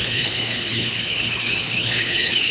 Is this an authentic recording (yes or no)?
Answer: no